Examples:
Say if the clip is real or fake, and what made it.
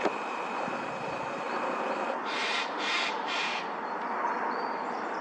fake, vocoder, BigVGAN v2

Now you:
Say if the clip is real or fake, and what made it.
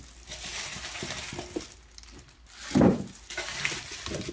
real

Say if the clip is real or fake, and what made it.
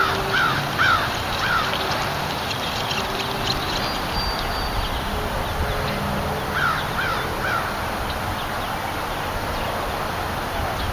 real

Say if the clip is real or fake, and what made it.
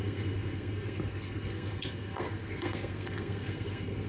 fake, codec, SNAC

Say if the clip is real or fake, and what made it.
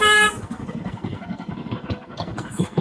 fake, codec, SNAC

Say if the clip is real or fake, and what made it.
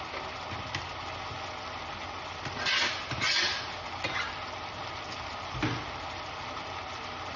real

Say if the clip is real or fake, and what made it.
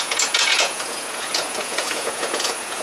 fake, vocoder, Vocos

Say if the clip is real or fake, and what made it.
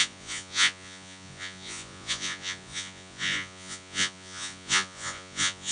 fake, vocoder, Vocos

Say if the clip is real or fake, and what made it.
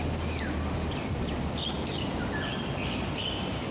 real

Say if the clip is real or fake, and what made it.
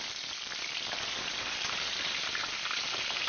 fake, vocoder, BigVGAN v2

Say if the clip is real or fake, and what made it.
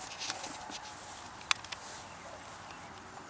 real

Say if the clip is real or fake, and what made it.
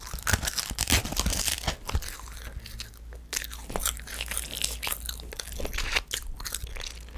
real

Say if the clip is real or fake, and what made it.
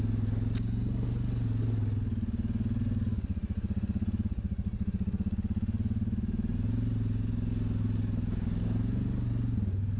real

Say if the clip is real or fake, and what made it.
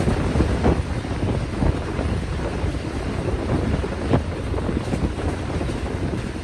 real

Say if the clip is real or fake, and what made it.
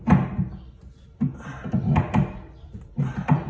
real